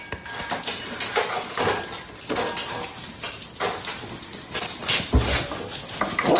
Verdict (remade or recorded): recorded